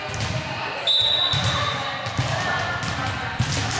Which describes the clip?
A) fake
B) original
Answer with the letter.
B